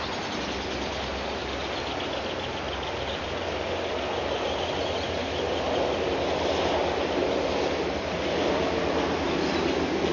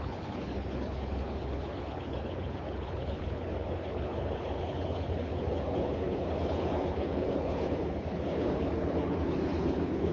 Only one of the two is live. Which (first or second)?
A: first